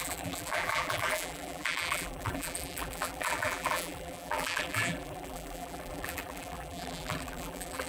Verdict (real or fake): fake